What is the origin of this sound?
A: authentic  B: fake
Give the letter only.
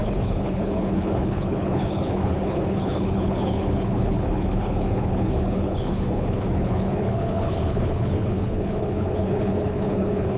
B